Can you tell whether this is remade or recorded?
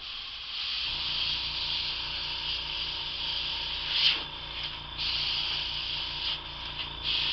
recorded